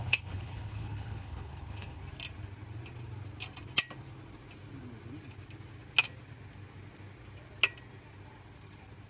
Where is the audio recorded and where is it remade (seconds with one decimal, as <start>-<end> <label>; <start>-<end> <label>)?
0.0-2.0 remade; 2.0-9.1 recorded